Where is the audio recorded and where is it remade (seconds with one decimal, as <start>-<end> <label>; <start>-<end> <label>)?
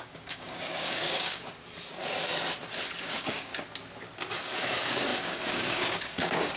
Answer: 0.0-1.4 remade; 1.4-3.0 recorded; 3.0-3.5 remade; 3.5-4.4 recorded; 4.4-6.6 remade